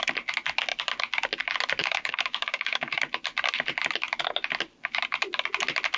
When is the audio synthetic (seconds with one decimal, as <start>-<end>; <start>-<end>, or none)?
1.8-3.0